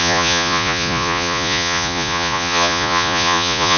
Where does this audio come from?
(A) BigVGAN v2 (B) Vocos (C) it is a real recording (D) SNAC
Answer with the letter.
B